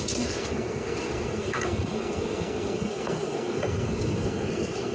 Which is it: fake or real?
fake